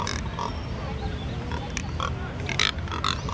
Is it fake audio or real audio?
real